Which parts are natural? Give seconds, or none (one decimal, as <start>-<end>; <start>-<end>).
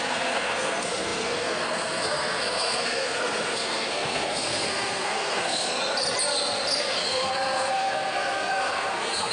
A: 5.7-6.8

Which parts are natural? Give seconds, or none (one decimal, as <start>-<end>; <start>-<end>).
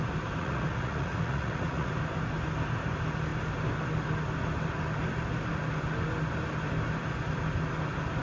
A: 0.0-0.4; 1.9-8.2